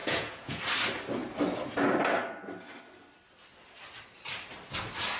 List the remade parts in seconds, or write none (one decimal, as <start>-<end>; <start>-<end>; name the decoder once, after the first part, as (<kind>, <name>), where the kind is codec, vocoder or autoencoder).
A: 0.0-0.6 (vocoder, Vocos)